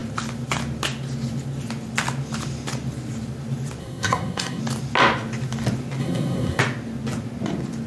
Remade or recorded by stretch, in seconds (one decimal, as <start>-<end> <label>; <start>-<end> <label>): 0.0-3.8 recorded; 3.8-4.6 remade; 4.6-6.0 recorded; 6.0-6.6 remade; 6.6-7.9 recorded